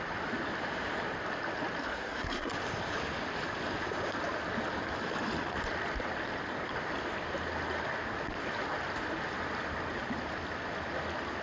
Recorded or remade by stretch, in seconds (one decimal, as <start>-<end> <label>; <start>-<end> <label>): 0.0-1.8 recorded; 1.8-2.5 remade; 2.5-11.4 recorded